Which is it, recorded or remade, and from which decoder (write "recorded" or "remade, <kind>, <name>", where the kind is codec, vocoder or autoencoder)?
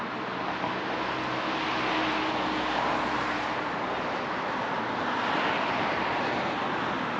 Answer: recorded